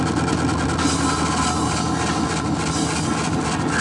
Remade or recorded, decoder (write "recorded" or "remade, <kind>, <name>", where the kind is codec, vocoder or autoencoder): recorded